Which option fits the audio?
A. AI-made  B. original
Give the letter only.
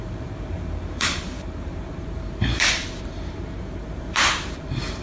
A